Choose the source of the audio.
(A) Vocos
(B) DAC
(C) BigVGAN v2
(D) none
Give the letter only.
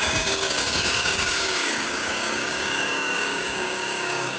B